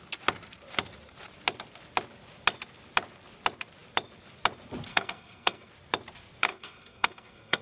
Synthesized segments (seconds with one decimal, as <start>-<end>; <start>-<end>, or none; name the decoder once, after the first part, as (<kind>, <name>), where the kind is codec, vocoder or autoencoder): 4.9-5.7 (codec, SNAC); 6.5-7.6